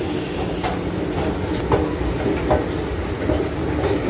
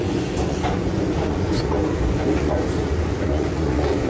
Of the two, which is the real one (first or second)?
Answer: first